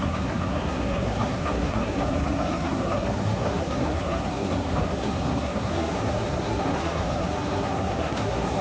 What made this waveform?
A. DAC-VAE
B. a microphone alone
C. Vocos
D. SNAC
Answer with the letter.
D